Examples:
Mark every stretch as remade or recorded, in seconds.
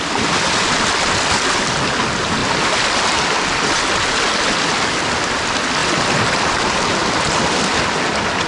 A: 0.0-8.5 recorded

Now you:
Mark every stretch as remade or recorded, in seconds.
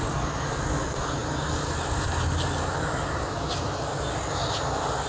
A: 0.0-5.1 recorded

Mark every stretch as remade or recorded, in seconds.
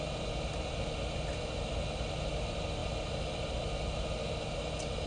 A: 0.0-5.1 recorded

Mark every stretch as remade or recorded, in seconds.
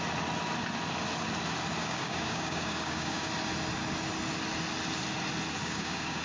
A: 0.0-1.8 recorded; 1.8-3.3 remade; 3.3-5.6 recorded; 5.6-6.2 remade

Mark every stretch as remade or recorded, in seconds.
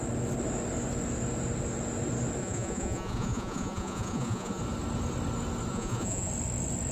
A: 0.0-2.4 recorded; 2.4-4.6 remade; 4.6-5.7 recorded; 5.7-6.3 remade; 6.3-6.9 recorded